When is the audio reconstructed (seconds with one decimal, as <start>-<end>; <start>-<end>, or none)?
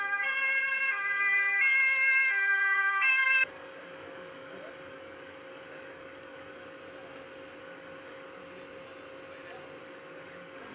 0.0-6.8; 7.6-8.4; 9.8-10.7